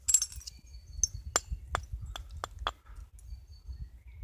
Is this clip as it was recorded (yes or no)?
yes